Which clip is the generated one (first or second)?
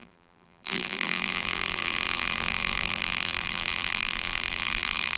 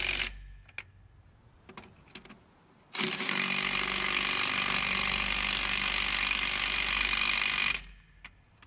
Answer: first